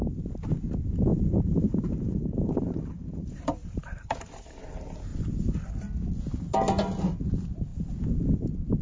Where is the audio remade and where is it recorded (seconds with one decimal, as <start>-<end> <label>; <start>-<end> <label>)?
0.0-1.1 recorded; 1.1-4.6 remade; 4.6-8.8 recorded